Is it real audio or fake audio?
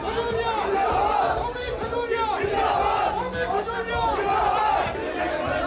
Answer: real